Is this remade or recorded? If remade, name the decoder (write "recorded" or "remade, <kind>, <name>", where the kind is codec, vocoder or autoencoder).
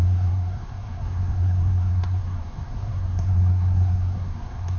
remade, codec, SNAC